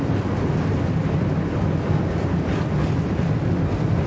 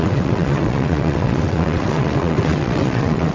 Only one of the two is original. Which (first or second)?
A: first